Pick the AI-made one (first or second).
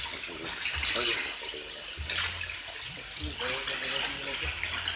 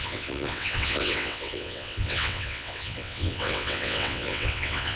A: second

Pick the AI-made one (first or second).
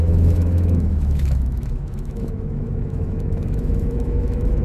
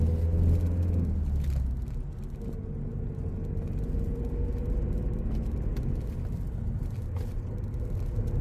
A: first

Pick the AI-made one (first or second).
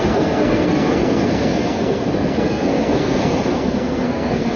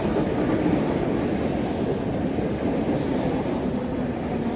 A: first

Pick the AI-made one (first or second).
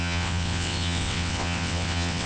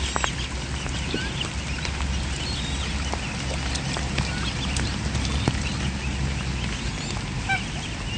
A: first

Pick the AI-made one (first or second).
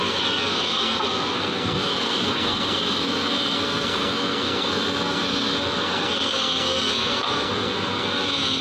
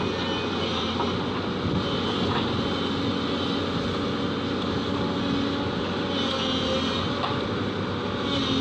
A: first